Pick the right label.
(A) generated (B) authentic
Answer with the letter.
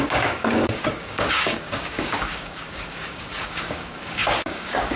A